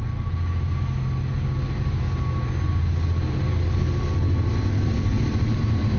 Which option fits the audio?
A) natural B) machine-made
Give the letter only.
A